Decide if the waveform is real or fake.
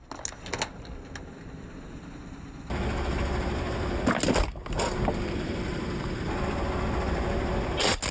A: real